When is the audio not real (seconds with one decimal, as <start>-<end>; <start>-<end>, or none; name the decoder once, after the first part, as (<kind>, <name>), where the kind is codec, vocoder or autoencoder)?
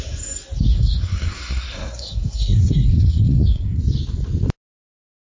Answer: 0.7-3.8 (codec, SNAC)